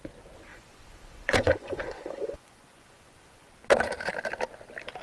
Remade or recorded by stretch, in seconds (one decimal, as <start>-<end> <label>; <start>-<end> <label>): 0.0-0.5 recorded; 0.5-3.5 remade; 3.5-5.0 recorded